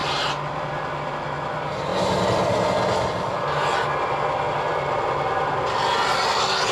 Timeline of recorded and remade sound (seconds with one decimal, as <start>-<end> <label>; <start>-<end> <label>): 0.0-4.7 recorded; 4.7-5.7 remade; 5.7-6.7 recorded